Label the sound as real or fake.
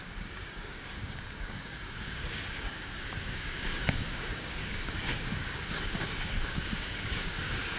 fake